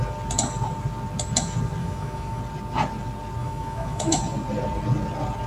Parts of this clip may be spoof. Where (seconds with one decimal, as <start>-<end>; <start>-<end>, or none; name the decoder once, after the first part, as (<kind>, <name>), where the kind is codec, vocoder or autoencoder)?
1.8-2.4 (autoencoder, DAC-VAE); 3.4-4.2